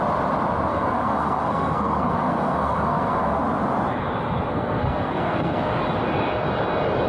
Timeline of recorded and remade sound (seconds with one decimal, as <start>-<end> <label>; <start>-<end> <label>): 0.0-0.7 recorded; 0.7-3.4 remade; 3.4-4.5 recorded; 4.5-5.7 remade; 5.7-7.1 recorded